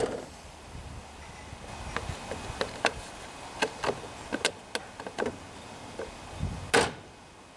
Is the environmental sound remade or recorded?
recorded